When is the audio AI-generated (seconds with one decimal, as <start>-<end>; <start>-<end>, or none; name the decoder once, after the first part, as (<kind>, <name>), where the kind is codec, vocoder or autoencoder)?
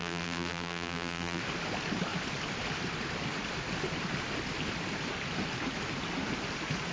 0.0-1.4 (vocoder, BigVGAN v2)